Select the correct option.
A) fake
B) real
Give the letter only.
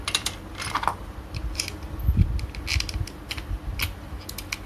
B